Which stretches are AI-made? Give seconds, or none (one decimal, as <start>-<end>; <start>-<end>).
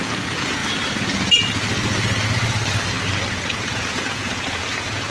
0.0-0.6; 3.3-5.1